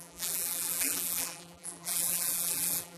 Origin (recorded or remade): remade